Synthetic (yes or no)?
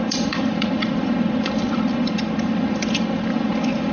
yes